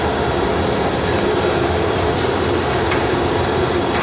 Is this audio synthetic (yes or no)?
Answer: no